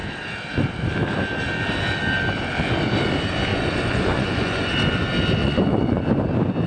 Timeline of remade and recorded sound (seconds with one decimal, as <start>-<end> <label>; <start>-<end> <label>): 0.0-3.5 recorded; 3.5-4.7 remade; 4.7-5.4 recorded; 5.4-6.0 remade; 6.0-6.7 recorded

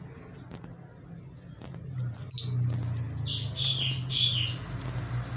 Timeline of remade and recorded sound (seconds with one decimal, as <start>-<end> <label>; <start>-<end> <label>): 0.0-5.4 recorded

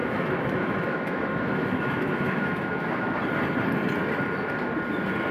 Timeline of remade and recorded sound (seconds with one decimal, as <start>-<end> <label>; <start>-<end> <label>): 0.0-3.2 remade; 3.2-5.3 recorded